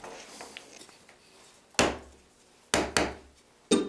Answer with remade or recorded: recorded